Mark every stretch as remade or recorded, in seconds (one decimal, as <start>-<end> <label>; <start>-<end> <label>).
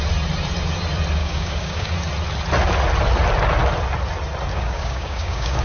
0.0-1.2 recorded; 1.2-1.9 remade; 1.9-4.5 recorded; 4.5-5.6 remade